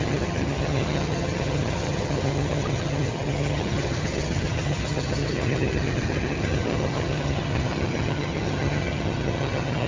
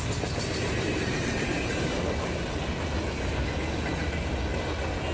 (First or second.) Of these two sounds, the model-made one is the first